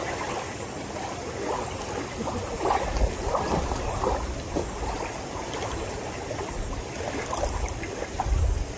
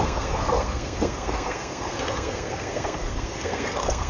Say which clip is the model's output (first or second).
second